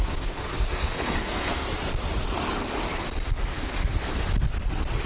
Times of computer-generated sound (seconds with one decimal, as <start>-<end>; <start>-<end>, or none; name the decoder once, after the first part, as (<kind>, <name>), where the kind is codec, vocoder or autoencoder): 0.0-1.7 (codec, SNAC)